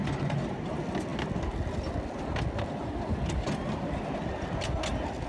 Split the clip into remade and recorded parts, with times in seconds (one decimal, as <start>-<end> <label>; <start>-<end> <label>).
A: 0.0-5.3 recorded